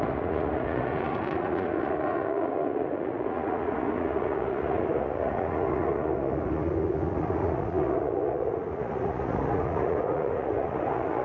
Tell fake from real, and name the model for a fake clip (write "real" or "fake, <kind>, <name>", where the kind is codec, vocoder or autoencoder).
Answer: fake, vocoder, Vocos